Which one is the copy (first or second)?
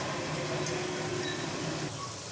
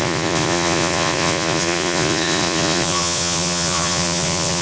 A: second